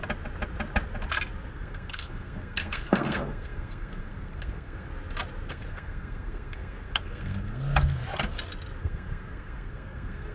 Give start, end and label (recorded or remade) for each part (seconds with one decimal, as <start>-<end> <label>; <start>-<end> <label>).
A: 0.0-1.5 recorded; 1.5-4.9 remade; 4.9-5.5 recorded; 5.5-8.0 remade; 8.0-8.8 recorded; 8.8-10.3 remade